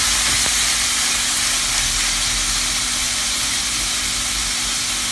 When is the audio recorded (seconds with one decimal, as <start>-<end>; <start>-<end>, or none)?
0.0-3.0; 3.6-5.1

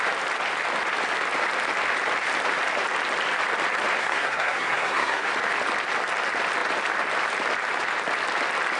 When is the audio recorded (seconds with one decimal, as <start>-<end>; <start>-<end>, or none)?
0.0-4.0; 5.3-8.8

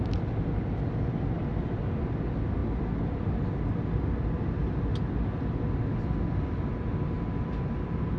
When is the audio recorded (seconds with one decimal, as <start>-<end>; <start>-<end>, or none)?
0.0-8.2

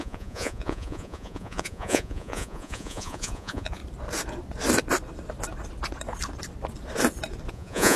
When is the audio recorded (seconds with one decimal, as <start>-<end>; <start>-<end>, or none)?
3.8-7.5

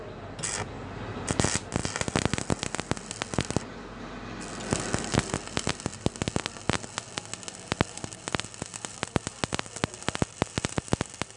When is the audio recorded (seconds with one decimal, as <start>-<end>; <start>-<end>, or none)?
0.0-11.4